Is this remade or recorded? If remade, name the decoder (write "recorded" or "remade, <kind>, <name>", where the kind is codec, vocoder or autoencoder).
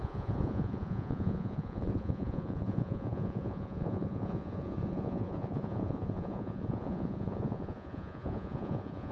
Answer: remade, vocoder, Vocos